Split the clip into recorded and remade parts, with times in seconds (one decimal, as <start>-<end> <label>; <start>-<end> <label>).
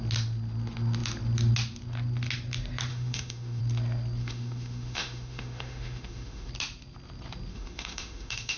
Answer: 0.0-2.9 recorded; 2.9-3.6 remade; 3.6-4.2 recorded; 4.2-6.5 remade; 6.5-7.5 recorded; 7.5-8.6 remade